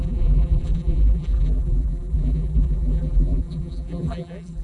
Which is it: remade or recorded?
remade